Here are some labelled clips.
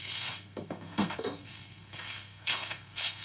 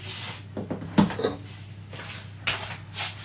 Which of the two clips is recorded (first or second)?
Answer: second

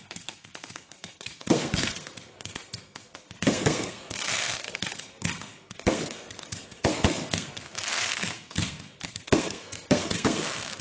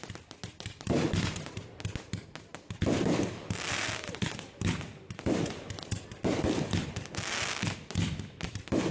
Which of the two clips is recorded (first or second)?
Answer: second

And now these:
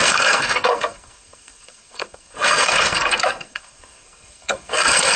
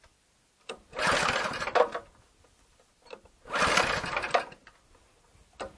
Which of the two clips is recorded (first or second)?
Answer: second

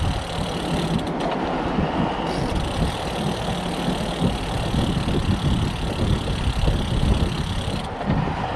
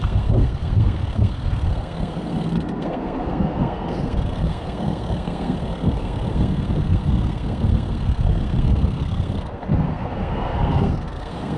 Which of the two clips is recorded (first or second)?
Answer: first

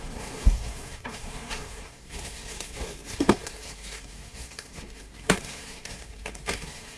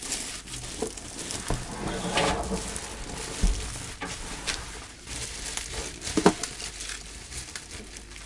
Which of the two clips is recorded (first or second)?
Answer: second